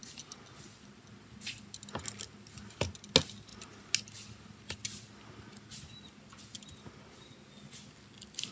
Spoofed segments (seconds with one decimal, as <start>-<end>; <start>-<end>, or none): none

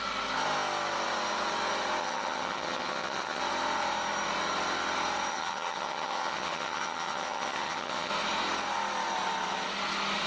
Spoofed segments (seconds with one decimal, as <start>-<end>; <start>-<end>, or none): 2.0-3.4; 5.3-8.1

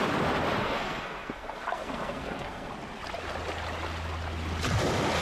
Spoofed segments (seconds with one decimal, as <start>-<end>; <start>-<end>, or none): 0.6-2.7

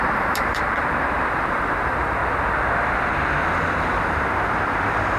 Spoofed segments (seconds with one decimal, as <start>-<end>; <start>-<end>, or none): 0.0-2.2; 3.5-5.2

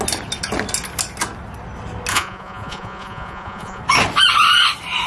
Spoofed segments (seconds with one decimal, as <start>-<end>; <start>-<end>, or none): 2.1-3.8

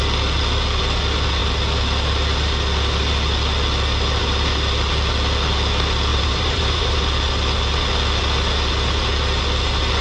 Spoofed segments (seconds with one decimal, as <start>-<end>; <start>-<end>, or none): 6.1-7.0